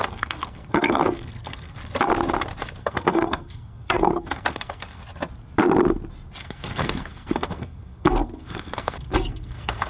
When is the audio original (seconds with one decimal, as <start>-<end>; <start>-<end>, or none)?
1.8-2.8; 5.0-6.4